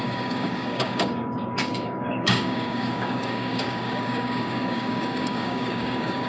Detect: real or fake fake